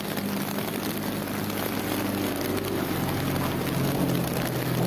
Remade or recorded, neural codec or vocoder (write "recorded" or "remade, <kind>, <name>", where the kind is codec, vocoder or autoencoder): recorded